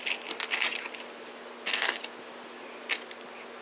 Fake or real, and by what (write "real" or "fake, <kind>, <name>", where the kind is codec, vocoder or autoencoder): real